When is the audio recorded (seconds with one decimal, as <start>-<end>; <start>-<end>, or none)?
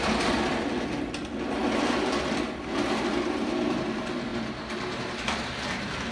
0.0-6.1